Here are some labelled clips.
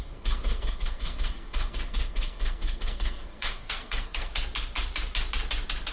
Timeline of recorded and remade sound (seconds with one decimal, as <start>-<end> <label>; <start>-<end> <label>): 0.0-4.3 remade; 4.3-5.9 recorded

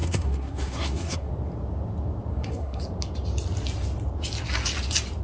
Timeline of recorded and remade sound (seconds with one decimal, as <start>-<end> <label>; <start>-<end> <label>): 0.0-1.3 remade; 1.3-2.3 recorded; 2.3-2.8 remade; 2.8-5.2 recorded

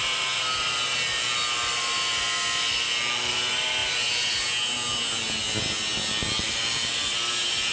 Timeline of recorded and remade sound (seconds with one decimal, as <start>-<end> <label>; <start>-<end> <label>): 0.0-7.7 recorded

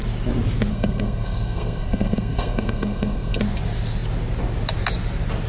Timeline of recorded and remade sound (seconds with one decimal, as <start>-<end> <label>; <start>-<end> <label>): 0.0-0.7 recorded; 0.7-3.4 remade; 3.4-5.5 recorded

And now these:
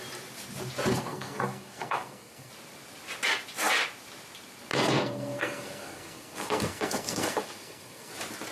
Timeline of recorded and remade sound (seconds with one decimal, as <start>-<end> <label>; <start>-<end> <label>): 0.0-0.9 recorded; 0.9-2.5 remade; 2.5-4.7 recorded; 4.7-8.1 remade; 8.1-8.5 recorded

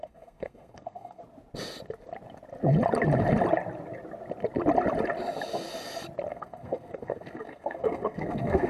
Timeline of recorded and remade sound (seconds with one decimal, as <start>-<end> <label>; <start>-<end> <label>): 0.0-1.2 remade; 1.2-6.3 recorded; 6.3-8.7 remade